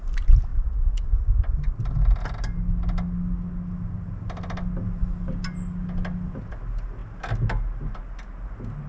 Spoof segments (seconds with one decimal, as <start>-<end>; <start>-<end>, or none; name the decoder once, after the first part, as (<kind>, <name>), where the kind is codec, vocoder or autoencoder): none